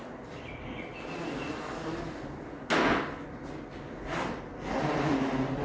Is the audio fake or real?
real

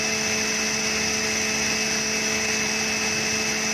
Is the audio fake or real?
real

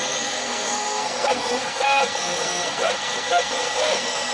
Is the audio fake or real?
fake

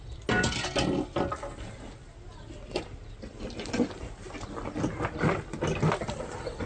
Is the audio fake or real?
real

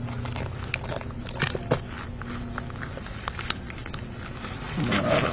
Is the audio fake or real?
real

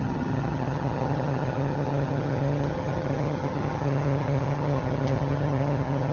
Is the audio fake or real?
fake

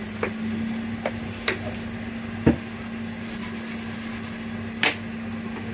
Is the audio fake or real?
real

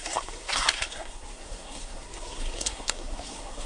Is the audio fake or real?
fake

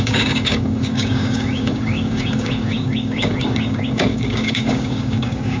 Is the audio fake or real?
fake